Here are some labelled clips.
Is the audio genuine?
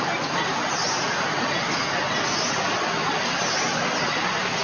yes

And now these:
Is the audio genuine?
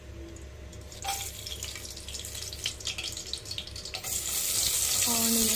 yes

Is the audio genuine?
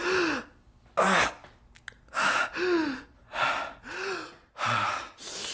yes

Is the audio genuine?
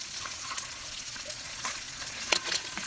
no